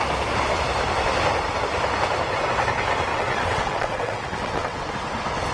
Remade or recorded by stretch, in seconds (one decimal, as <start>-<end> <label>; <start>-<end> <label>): 0.0-3.1 recorded; 3.1-4.9 remade; 4.9-5.5 recorded